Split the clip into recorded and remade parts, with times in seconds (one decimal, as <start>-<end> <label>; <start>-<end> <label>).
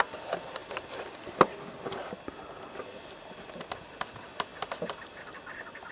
0.0-0.6 remade; 0.6-4.1 recorded; 4.1-4.5 remade; 4.5-5.2 recorded; 5.2-5.9 remade